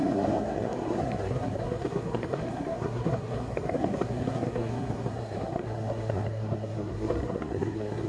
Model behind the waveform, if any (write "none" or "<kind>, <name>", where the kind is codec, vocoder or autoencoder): codec, SNAC